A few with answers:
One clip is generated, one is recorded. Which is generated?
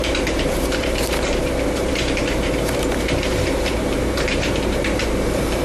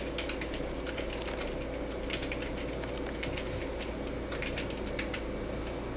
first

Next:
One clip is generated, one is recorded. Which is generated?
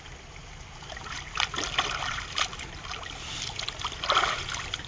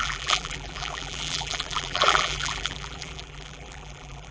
second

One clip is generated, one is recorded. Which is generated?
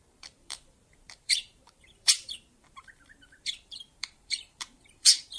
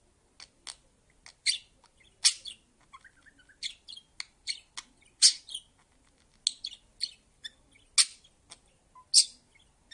first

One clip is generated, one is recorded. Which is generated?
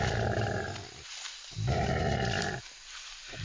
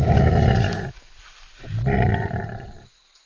second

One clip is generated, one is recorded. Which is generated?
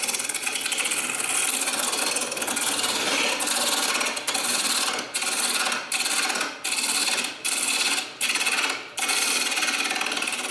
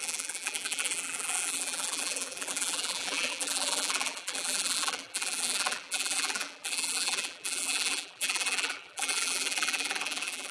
second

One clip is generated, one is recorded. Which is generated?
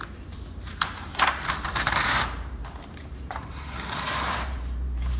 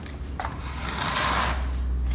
first